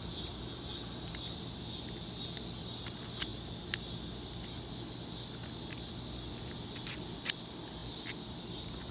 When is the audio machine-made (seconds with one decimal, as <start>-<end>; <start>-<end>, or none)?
none